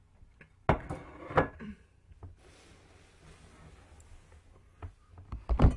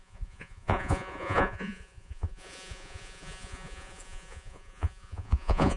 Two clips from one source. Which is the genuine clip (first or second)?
first